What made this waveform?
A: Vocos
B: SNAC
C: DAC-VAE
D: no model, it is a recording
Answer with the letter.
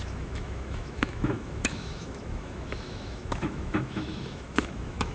C